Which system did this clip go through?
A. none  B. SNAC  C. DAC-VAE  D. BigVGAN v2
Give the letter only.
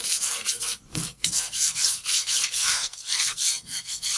B